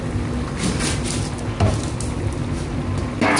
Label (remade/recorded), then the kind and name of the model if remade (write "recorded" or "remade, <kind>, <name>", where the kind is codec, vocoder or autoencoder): recorded